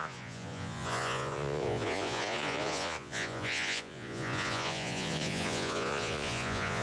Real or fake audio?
fake